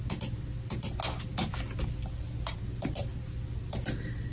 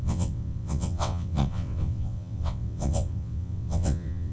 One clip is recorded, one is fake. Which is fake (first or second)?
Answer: second